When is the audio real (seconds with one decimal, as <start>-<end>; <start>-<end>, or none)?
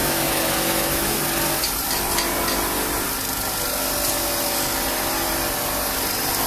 1.2-6.5